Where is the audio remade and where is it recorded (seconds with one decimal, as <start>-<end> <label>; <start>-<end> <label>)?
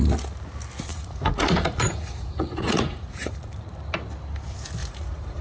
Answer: 0.0-0.9 recorded; 0.9-3.5 remade; 3.5-4.8 recorded; 4.8-5.4 remade